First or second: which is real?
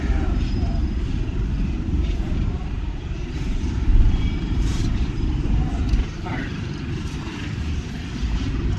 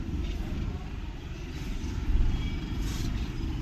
second